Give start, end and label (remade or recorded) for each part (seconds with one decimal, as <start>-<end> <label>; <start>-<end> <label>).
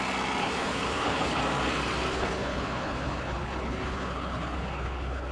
0.0-0.4 recorded; 0.4-1.4 remade; 1.4-2.1 recorded; 2.1-5.3 remade